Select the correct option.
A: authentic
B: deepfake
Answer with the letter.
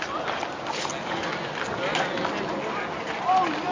A